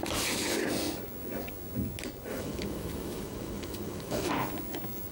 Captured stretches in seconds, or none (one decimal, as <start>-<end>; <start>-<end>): 0.0-2.3; 4.3-5.1